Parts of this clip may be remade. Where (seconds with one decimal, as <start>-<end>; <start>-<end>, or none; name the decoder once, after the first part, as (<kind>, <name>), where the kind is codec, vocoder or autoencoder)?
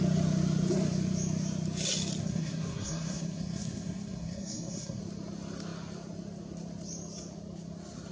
2.2-5.0 (codec, SNAC)